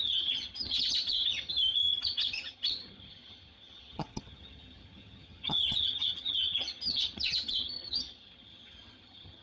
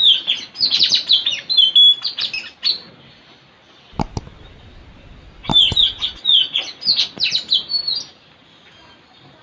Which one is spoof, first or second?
first